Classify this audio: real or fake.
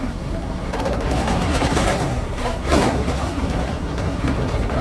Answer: fake